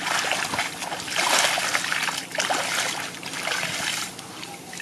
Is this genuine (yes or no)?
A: yes